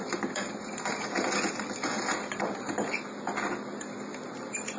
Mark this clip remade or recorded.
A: recorded